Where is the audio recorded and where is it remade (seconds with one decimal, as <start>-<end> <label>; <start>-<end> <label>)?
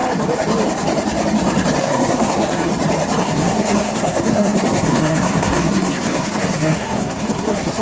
0.0-1.8 recorded; 1.8-2.7 remade; 2.7-3.2 recorded; 3.2-7.8 remade